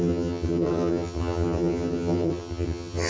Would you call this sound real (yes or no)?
no